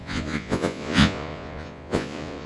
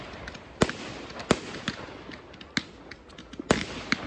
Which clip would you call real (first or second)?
second